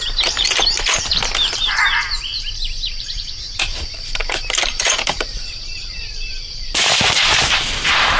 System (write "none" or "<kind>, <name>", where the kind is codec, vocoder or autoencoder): vocoder, BigVGAN v2